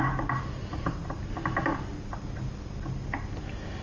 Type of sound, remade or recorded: recorded